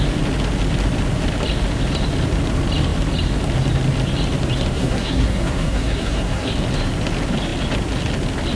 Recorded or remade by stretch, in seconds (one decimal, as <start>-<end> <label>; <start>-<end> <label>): 0.0-4.7 recorded; 4.7-6.5 remade; 6.5-8.6 recorded